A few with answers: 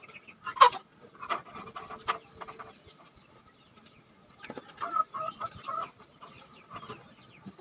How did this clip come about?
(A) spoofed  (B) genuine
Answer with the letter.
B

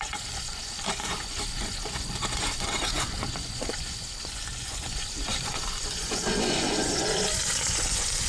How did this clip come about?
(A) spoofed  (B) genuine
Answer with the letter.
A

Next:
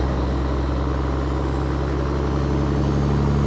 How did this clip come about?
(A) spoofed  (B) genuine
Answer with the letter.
B